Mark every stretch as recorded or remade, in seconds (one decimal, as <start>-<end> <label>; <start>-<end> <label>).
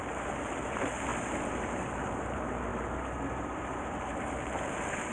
0.0-1.1 remade; 1.1-1.7 recorded; 1.7-2.7 remade; 2.7-3.8 recorded; 3.8-5.1 remade